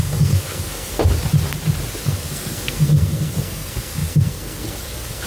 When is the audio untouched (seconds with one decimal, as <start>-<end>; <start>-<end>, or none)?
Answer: 1.0-2.0